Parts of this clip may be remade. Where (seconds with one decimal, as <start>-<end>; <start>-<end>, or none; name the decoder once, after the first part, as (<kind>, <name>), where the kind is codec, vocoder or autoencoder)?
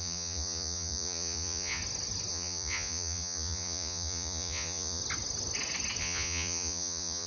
0.0-1.8 (vocoder, Vocos); 2.3-5.0; 6.0-7.3